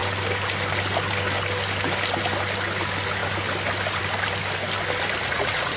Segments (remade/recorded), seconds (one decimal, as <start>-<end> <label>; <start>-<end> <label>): 0.0-5.2 recorded; 5.2-5.8 remade